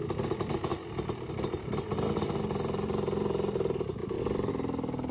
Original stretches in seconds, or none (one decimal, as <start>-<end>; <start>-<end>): 0.0-0.7; 1.3-4.0; 4.5-5.1